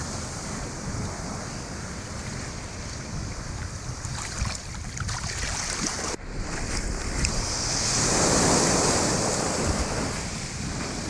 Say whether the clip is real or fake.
real